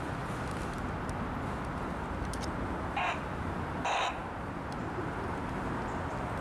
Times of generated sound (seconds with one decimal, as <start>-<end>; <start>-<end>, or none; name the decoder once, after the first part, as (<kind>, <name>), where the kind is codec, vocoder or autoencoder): none